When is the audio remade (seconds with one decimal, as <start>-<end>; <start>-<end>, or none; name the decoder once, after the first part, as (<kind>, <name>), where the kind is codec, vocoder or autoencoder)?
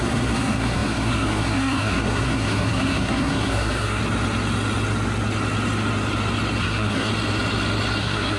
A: 0.0-4.0 (codec, SNAC); 6.6-7.1; 8.0-8.4